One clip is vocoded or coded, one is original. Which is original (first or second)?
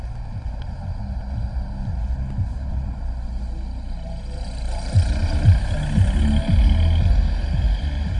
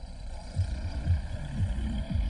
first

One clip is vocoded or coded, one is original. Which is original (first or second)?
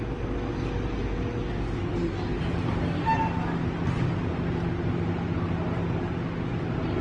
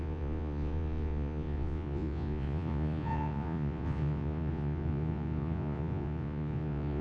first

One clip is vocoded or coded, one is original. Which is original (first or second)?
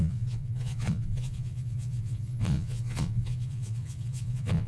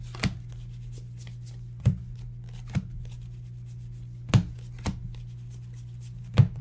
second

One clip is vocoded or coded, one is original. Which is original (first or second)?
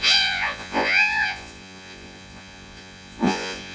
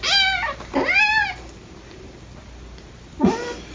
second